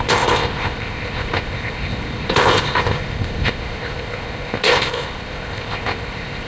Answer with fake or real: fake